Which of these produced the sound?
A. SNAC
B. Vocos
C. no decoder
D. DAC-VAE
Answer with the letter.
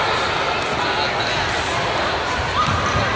C